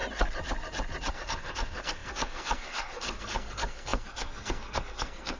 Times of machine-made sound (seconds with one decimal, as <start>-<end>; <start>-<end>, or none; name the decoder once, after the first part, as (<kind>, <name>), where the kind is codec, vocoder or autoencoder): 1.1-5.4 (codec, SNAC)